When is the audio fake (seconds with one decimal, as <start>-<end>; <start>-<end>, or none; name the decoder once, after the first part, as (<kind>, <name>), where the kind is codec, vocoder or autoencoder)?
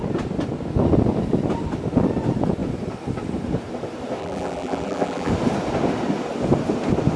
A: 4.2-5.3 (vocoder, BigVGAN v2)